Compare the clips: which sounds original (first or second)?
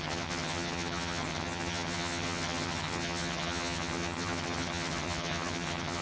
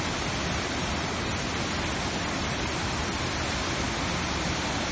second